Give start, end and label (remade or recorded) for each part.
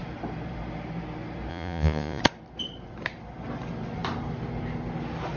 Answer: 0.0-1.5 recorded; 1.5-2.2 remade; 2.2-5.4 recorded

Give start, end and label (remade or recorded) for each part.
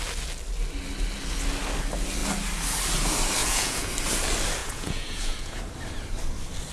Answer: 0.0-3.4 recorded; 3.4-3.9 remade; 3.9-4.6 recorded; 4.6-5.6 remade; 5.6-6.7 recorded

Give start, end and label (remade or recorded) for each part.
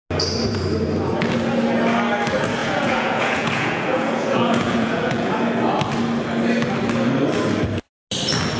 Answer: 0.0-2.6 recorded; 2.6-5.3 remade; 5.3-8.6 recorded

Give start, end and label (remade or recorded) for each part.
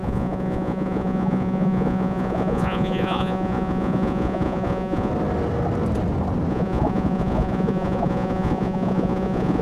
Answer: 0.0-5.1 remade; 5.1-6.5 recorded; 6.5-9.6 remade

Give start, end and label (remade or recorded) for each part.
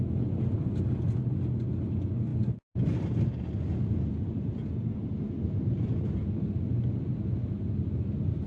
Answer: 0.0-8.5 recorded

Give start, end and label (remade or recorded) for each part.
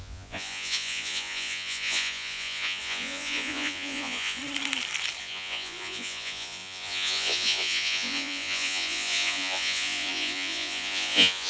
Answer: 0.0-4.4 remade; 4.4-5.2 recorded; 5.2-11.5 remade